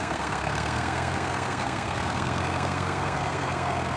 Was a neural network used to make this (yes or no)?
yes